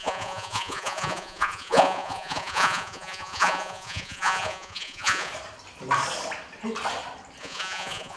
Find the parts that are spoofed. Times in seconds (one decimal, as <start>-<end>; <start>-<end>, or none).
0.0-5.3; 7.4-8.2